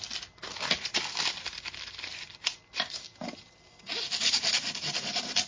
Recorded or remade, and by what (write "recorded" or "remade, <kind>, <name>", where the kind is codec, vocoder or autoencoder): recorded